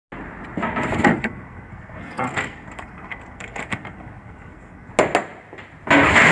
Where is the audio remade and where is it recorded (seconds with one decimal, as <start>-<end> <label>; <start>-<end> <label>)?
0.0-1.1 recorded; 1.1-4.9 remade; 4.9-6.3 recorded